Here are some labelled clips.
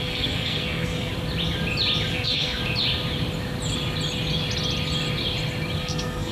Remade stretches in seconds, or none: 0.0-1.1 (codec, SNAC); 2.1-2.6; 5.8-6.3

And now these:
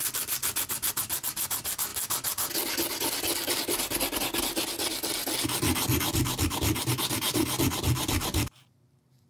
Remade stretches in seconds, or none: none